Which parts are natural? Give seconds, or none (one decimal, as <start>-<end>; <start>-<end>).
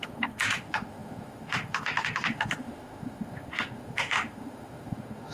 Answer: none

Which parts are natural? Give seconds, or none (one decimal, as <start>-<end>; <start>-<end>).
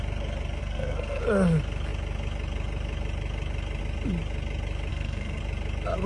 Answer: 0.0-0.6; 1.2-4.9; 5.4-6.1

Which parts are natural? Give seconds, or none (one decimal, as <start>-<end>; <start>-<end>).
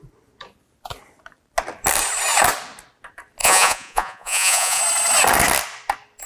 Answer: 0.0-3.4; 4.8-6.3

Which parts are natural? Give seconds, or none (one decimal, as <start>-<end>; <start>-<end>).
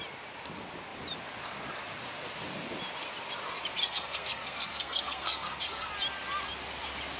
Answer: 0.0-3.8; 5.9-7.2